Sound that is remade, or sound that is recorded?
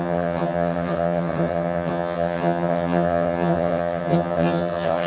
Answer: remade